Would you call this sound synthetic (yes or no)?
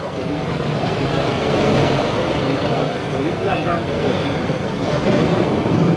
yes